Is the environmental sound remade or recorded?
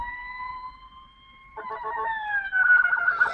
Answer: remade